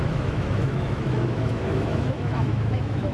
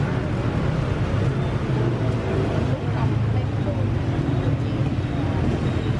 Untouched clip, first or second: second